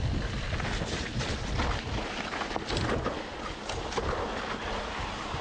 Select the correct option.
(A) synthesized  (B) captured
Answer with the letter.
B